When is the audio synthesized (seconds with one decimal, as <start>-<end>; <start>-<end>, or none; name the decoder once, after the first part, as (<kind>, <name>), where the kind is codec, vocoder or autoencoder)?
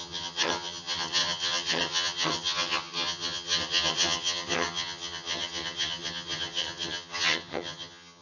0.0-8.2 (vocoder, HiFi-GAN)